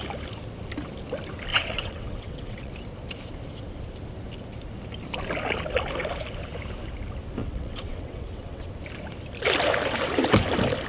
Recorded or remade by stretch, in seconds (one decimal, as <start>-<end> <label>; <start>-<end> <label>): 0.0-1.5 recorded; 1.5-2.7 remade; 2.7-7.4 recorded; 7.4-8.7 remade; 8.7-10.9 recorded